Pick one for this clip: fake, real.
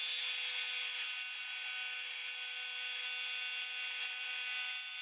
real